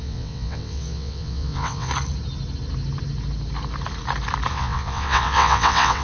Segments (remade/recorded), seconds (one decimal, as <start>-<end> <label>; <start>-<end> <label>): 0.0-1.9 remade; 1.9-4.5 recorded; 4.5-6.0 remade